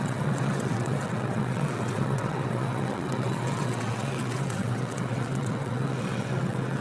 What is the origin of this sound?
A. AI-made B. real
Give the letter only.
A